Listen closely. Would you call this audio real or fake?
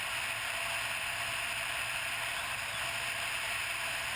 real